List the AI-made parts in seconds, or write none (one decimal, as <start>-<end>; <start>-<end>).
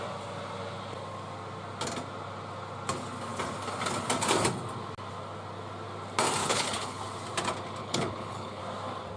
6.4-7.0; 7.8-8.6